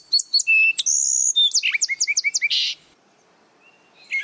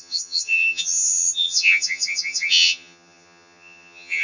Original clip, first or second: first